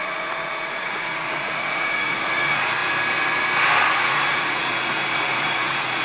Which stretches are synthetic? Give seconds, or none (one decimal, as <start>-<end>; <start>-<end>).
0.0-2.8; 3.9-6.0